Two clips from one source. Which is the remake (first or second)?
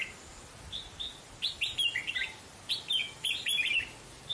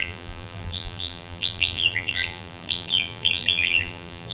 second